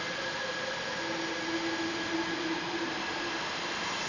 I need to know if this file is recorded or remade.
recorded